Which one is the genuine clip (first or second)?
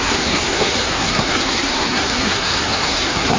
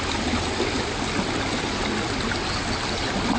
second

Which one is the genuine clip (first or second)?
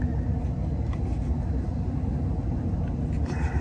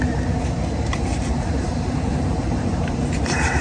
first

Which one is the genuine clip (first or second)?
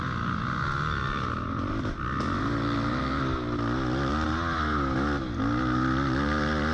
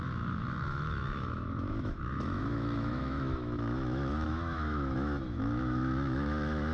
first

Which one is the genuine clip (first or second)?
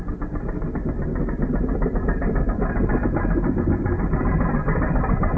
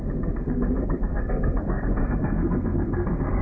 first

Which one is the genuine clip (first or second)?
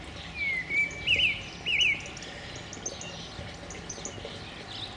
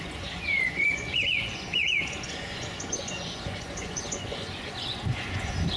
first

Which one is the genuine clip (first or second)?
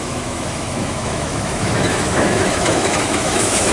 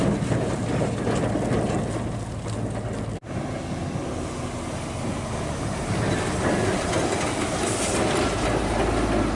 second